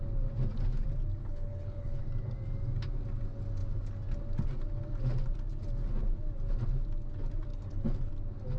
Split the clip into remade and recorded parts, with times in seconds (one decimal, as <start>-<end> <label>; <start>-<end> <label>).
0.0-1.2 recorded; 1.2-2.0 remade; 2.0-7.5 recorded; 7.5-8.1 remade; 8.1-8.6 recorded